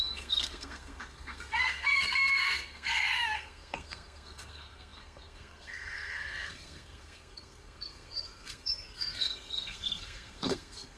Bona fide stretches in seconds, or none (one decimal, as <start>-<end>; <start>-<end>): none

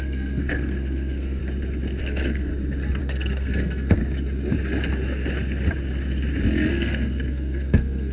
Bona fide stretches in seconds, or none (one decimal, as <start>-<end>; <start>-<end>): 1.4-2.0; 2.5-3.0; 4.0-6.7

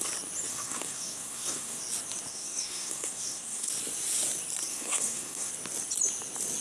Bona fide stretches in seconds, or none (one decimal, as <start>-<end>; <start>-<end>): 0.0-0.5; 1.8-2.3; 3.7-4.7; 5.5-6.6

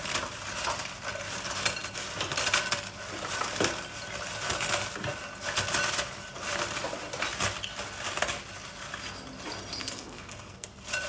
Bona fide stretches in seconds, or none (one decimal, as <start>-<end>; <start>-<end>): 0.0-9.8; 10.7-11.1

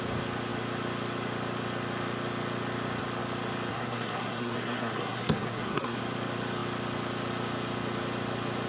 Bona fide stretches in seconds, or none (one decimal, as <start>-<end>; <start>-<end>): 0.0-3.7; 6.0-8.7

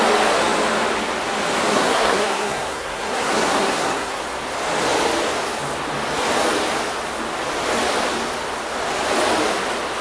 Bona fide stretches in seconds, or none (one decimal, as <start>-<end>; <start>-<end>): 0.0-1.7; 4.2-10.0

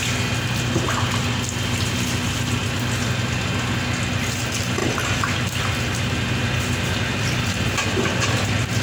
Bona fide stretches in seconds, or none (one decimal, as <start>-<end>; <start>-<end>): 0.0-8.8

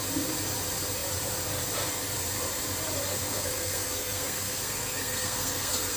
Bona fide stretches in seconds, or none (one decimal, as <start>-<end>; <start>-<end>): 0.0-3.1